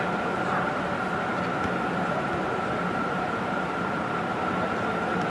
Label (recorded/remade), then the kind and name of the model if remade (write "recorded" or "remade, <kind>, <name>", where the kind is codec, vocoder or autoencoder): recorded